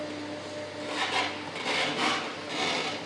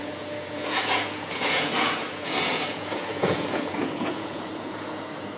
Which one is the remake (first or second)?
second